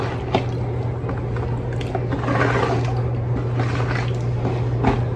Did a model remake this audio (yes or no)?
no